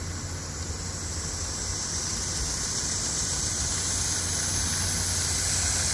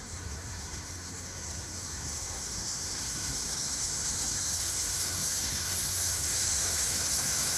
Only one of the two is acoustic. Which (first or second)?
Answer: first